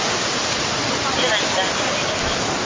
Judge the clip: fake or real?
real